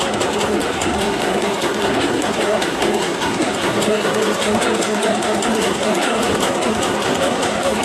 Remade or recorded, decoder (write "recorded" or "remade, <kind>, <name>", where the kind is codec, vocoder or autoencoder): remade, codec, SNAC